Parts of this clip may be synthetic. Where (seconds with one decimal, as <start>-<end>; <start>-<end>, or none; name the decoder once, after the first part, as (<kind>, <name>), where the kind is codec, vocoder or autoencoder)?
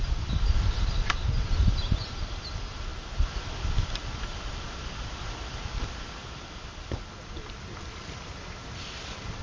none